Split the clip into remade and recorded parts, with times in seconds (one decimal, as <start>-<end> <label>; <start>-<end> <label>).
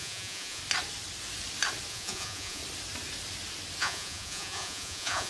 0.0-0.6 remade; 0.6-1.9 recorded; 1.9-2.6 remade; 2.6-3.8 recorded; 3.8-5.3 remade